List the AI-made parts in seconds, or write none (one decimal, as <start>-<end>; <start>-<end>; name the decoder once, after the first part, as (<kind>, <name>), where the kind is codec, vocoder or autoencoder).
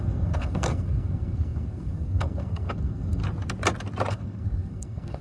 0.0-3.2 (codec, SNAC); 4.1-5.2